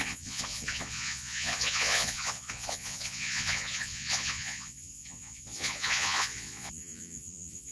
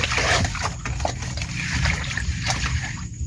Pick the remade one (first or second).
first